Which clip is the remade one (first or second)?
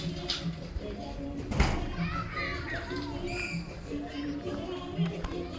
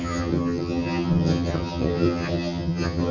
second